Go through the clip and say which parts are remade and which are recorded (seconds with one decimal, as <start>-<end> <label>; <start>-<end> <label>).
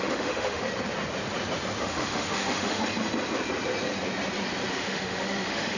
0.0-0.6 remade; 0.6-1.8 recorded; 1.8-2.8 remade; 2.8-4.7 recorded; 4.7-5.8 remade